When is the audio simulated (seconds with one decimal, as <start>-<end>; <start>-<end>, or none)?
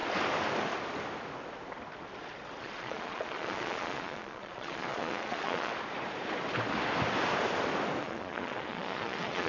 2.6-5.7; 8.0-9.5